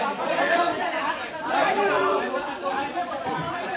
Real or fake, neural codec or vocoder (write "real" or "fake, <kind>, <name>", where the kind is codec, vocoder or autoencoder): fake, vocoder, Vocos